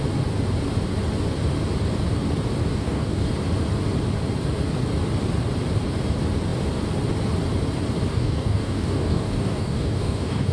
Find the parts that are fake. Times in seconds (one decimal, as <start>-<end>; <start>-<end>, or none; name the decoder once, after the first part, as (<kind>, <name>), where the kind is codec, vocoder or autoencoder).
2.6-3.3 (codec, DAC); 8.1-10.5